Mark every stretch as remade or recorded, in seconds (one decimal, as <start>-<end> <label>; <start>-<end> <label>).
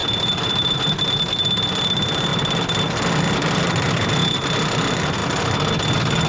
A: 0.0-6.3 recorded